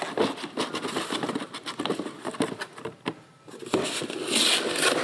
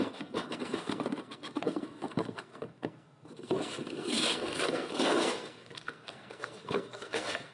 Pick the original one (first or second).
first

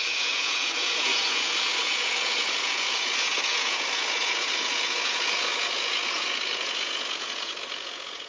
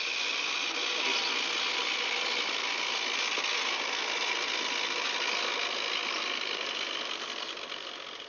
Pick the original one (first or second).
second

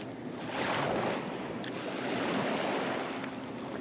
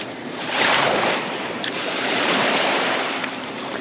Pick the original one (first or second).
first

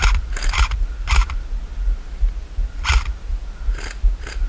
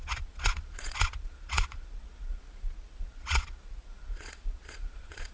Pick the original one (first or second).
first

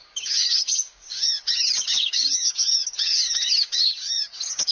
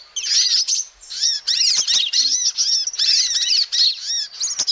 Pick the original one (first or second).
second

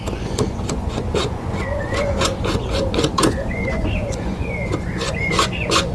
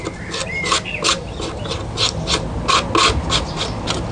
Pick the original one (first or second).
second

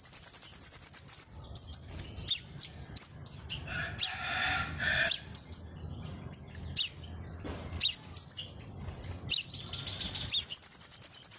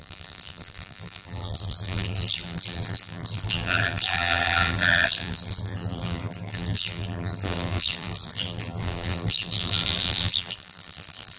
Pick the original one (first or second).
first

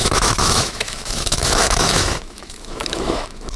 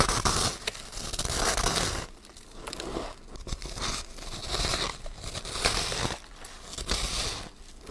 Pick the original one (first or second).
second